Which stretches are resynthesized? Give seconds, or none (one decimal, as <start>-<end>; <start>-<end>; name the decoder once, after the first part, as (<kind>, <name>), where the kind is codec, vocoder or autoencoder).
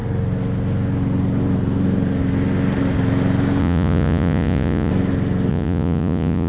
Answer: 3.6-4.9 (vocoder, Vocos); 5.5-6.5